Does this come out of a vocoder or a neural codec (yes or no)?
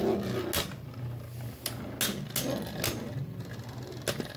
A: no